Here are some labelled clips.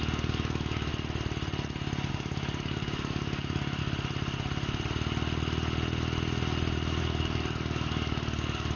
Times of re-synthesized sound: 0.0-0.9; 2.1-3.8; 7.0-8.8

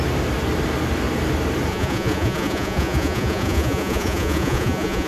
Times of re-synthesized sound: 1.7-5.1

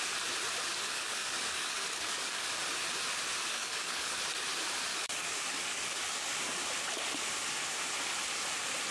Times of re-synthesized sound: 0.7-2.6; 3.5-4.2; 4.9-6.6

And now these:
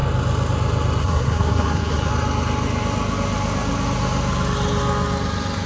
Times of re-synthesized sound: 1.0-2.1

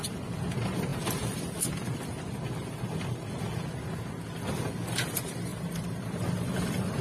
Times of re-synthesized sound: 0.9-1.6; 5.5-7.0